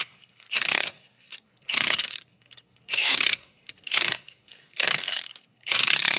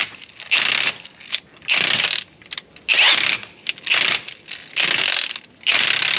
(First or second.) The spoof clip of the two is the first